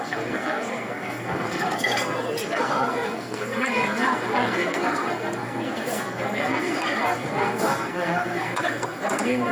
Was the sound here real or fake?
fake